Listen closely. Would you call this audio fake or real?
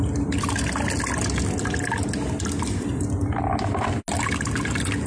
real